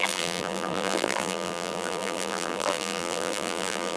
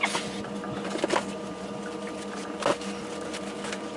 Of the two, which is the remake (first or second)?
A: first